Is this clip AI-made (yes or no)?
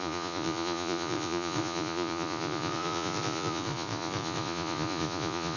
yes